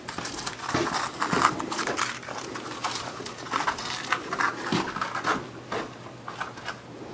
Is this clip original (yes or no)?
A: yes